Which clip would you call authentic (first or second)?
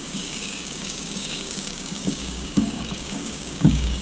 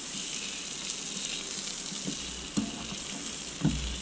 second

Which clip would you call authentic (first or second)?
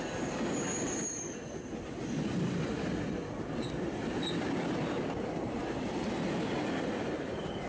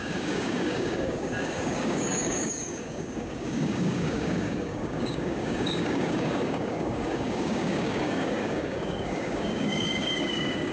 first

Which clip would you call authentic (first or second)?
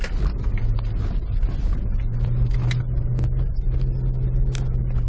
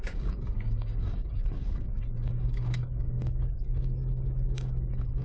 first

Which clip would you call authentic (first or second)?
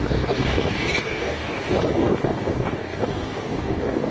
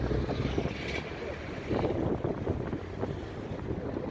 second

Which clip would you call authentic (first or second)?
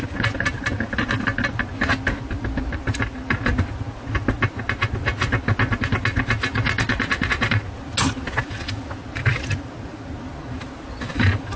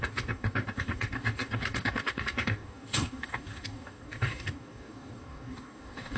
first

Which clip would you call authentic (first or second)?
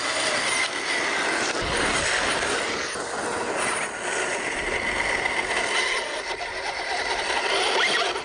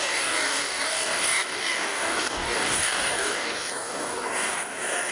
first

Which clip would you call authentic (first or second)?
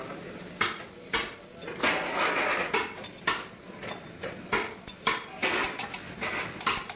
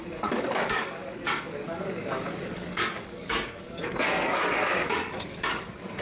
first